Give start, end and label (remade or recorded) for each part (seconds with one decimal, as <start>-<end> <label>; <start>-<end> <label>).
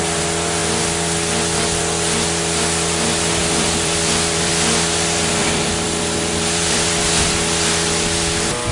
0.0-3.4 recorded; 3.4-4.5 remade; 4.5-5.4 recorded; 5.4-7.0 remade; 7.0-8.7 recorded